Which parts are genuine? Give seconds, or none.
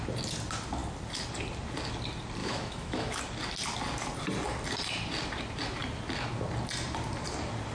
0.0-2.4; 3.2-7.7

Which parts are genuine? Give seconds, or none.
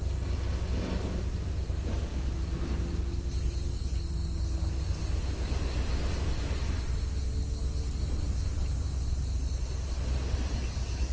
0.0-11.1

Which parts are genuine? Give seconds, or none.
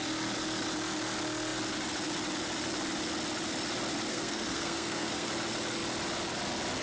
0.0-4.1; 5.3-6.8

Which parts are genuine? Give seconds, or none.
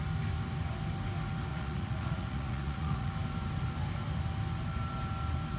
0.0-1.5; 3.1-5.6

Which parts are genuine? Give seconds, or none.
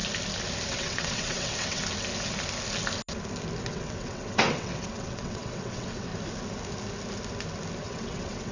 0.0-0.7; 1.8-3.7; 6.1-7.8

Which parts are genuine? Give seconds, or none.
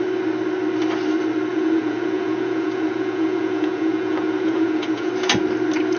0.0-1.5; 5.1-6.0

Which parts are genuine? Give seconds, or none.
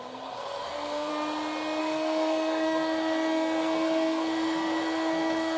1.1-1.8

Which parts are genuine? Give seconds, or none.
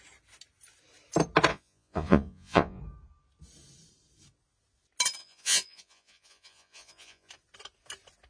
0.0-1.5; 2.8-5.2; 7.3-8.3